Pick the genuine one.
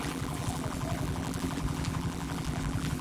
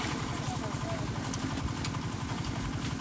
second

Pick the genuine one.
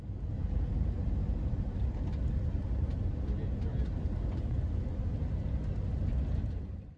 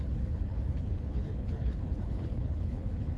first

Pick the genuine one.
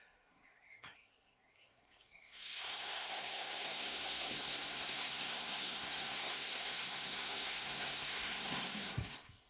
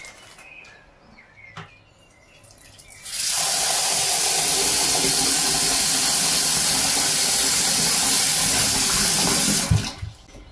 second